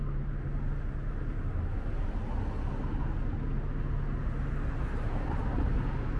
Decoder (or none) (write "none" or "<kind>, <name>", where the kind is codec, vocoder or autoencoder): none